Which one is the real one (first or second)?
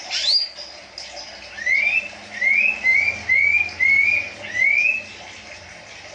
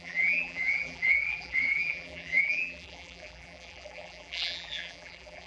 first